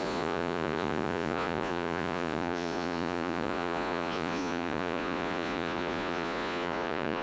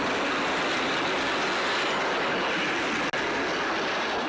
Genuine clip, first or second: second